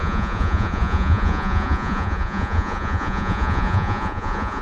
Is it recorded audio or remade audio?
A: remade